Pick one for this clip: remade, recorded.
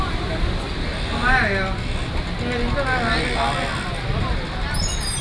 recorded